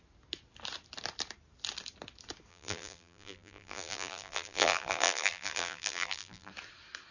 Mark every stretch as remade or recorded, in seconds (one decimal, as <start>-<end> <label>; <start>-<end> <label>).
0.0-2.5 recorded; 2.5-6.5 remade; 6.5-7.1 recorded